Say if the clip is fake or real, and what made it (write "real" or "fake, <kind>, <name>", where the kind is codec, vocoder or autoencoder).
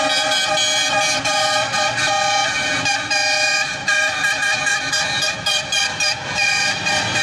fake, vocoder, BigVGAN v2